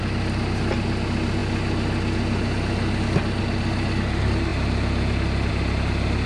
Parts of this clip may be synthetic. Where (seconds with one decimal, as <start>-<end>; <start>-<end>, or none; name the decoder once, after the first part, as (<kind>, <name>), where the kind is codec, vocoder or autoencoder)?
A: none